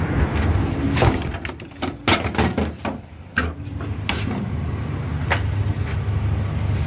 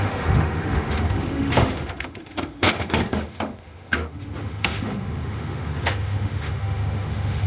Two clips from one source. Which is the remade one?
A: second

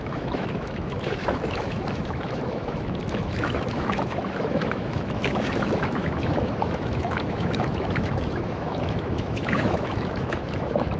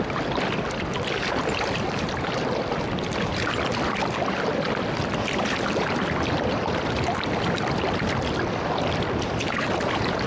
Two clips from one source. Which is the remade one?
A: first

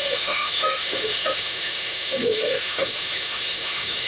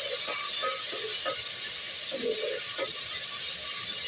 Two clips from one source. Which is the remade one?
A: first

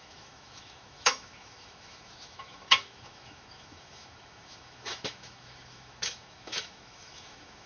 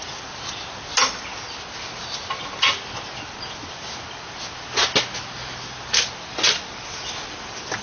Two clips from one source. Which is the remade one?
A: first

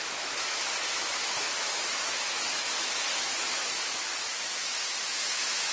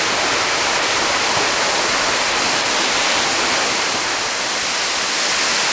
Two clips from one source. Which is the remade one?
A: first